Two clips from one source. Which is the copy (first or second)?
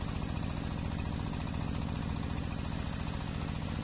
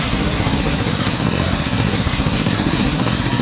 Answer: second